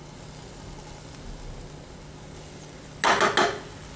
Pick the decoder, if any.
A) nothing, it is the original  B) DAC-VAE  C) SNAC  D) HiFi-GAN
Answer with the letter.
A